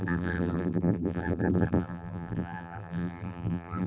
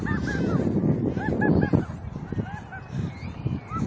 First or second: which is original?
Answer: second